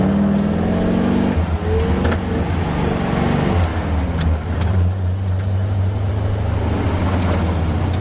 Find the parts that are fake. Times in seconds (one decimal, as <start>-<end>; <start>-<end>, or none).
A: none